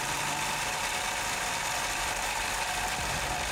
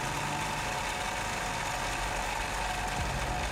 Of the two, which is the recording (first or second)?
second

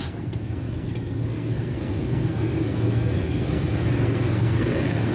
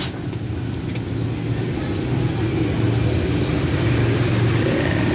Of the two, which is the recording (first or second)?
second